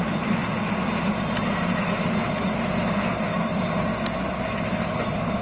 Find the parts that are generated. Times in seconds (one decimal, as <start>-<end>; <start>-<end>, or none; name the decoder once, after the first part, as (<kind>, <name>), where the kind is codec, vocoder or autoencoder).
none